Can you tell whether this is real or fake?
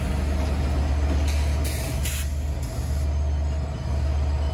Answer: real